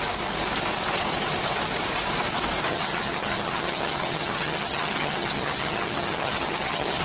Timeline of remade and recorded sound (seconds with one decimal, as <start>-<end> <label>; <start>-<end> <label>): 0.0-2.7 recorded; 2.7-7.0 remade